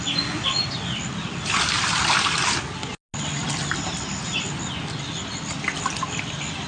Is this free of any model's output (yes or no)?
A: yes